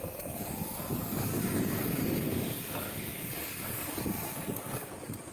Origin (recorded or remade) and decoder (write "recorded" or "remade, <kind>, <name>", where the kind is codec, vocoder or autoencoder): remade, codec, DAC